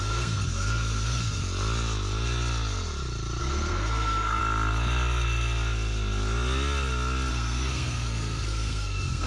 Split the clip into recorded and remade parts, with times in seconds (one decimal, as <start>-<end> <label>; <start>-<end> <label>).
0.0-1.4 remade; 1.4-3.4 recorded; 3.4-4.4 remade; 4.4-7.3 recorded; 7.3-9.3 remade